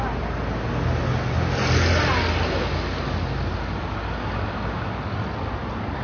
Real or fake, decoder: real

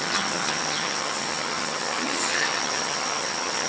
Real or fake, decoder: fake, vocoder, HiFi-GAN